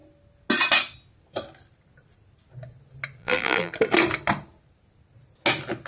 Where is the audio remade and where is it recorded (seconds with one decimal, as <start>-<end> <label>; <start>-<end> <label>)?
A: 0.0-3.2 recorded; 3.2-3.7 remade; 3.7-5.9 recorded